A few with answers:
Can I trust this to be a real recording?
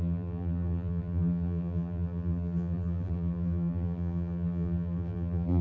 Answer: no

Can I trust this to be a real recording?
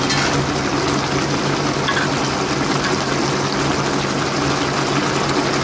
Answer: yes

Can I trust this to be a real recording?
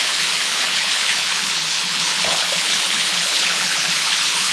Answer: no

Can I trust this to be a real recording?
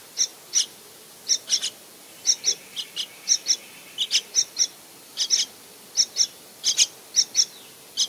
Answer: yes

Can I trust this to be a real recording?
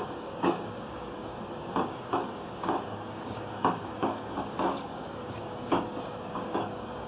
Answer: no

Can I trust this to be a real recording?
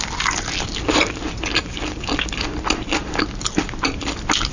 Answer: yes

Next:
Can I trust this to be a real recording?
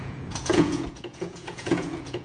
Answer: no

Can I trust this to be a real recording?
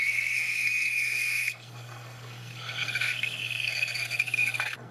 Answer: no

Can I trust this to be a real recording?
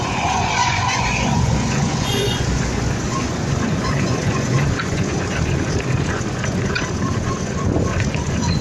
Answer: no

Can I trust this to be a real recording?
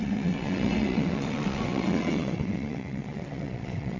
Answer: no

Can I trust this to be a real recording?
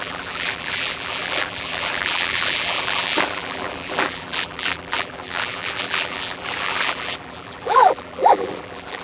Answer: no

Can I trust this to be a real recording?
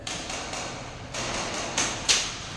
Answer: yes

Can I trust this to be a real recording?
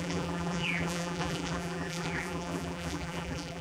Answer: no